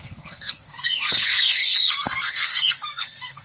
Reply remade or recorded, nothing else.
remade